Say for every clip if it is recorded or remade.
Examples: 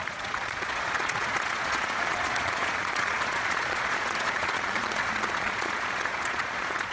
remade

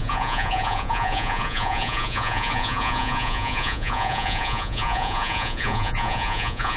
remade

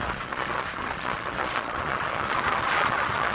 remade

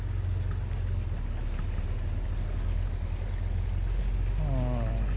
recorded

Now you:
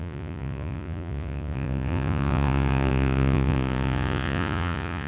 remade